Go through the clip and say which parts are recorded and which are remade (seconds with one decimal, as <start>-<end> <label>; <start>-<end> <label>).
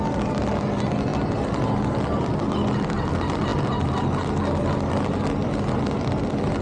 0.0-6.6 recorded